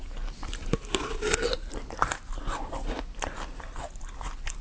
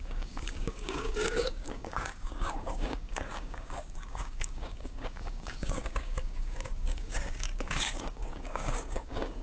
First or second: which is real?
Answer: first